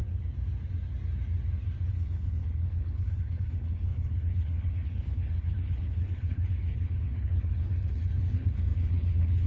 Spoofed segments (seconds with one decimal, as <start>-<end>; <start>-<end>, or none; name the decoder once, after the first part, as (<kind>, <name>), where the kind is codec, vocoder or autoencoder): 1.9-9.5 (codec, HILCodec)